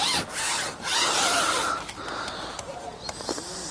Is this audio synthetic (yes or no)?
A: no